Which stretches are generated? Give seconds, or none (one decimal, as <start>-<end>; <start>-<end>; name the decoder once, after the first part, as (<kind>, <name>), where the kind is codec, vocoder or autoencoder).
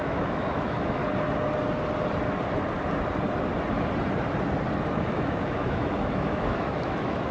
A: 0.0-1.0 (autoencoder, DAC-VAE); 4.9-7.3